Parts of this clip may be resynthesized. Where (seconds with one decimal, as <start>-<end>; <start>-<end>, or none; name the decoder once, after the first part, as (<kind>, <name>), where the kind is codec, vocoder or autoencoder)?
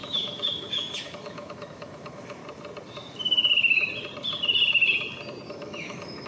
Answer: 0.0-2.4 (autoencoder, DAC-VAE); 5.5-6.3